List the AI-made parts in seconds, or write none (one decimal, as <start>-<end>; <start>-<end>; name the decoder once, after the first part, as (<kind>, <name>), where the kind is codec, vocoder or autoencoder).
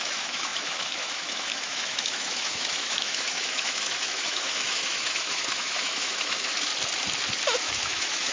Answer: 0.0-6.7 (autoencoder, DAC-VAE); 7.6-8.3